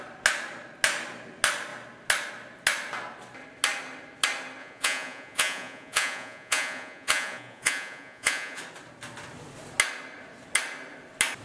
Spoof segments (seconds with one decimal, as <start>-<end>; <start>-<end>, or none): 4.6-8.6